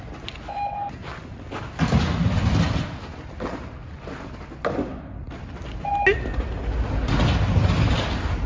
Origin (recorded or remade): recorded